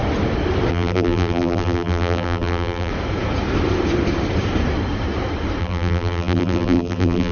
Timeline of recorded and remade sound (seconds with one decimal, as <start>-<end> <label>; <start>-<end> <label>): 0.0-0.7 recorded; 0.7-2.9 remade; 2.9-5.6 recorded; 5.6-7.3 remade